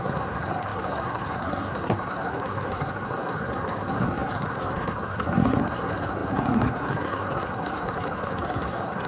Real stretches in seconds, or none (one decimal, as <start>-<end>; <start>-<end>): none